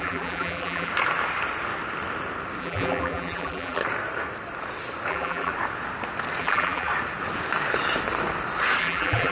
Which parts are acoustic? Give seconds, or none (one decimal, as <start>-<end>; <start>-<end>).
0.9-2.6; 3.8-5.1; 5.5-6.4; 6.9-8.8